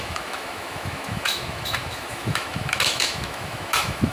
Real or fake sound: fake